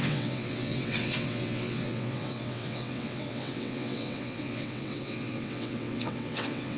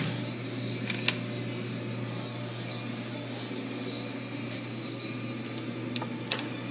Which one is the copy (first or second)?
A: first